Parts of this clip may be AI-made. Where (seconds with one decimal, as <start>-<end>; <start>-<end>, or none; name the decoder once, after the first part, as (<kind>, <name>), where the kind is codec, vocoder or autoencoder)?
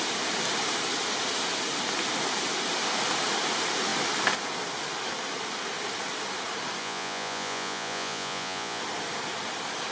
6.8-8.8 (vocoder, Vocos)